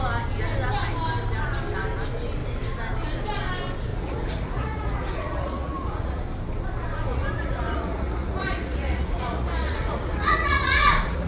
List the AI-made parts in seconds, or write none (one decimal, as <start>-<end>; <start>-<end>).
3.9-6.2; 7.1-11.3